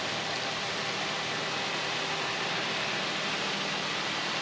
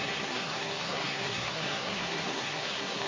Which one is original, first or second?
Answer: first